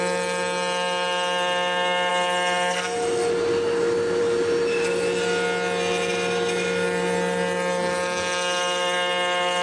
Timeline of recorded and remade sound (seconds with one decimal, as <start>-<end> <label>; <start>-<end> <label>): 0.0-9.6 recorded